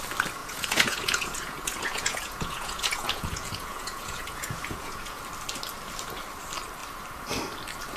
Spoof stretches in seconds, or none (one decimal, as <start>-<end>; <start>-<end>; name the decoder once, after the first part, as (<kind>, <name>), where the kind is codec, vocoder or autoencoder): 0.4-5.2 (vocoder, Vocos)